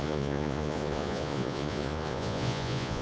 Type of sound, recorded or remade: remade